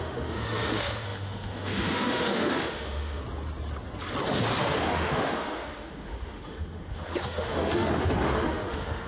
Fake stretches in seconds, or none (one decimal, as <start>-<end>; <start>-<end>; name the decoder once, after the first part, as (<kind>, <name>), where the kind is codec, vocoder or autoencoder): 0.0-3.2 (autoencoder, DAC-VAE); 4.6-9.1